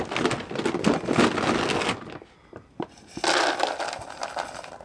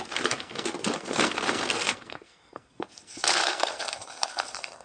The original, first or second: first